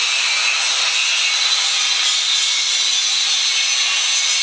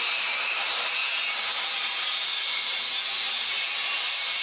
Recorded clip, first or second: first